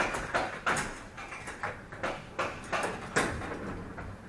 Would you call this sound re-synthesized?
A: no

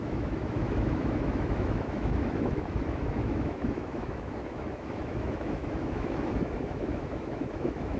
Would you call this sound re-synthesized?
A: yes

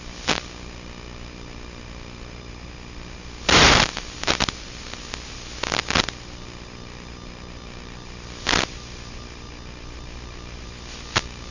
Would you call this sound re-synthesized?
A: no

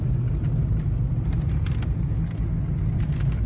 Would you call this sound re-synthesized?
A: no